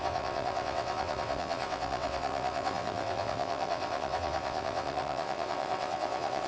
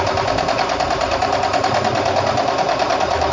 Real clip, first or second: second